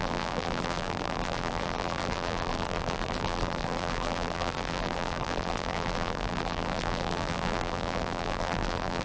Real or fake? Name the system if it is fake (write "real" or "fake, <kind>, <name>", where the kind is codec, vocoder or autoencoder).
fake, vocoder, BigVGAN v2